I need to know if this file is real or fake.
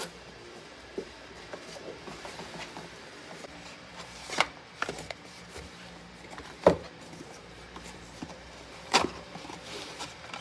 fake